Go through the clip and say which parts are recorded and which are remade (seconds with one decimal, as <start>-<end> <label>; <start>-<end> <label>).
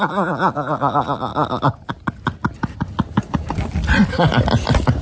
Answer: 0.0-5.0 recorded